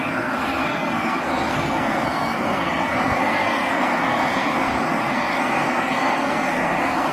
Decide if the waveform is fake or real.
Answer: fake